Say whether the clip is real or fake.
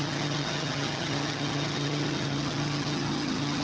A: fake